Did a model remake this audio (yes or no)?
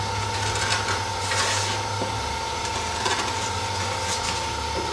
no